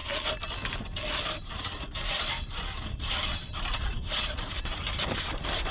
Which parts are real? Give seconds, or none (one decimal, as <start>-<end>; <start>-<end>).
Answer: 0.0-1.1